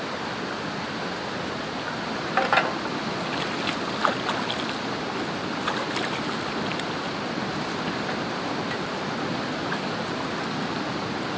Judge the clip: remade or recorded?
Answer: recorded